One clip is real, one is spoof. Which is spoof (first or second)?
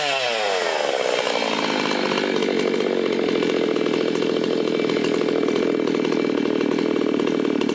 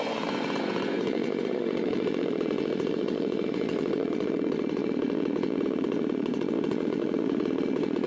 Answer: second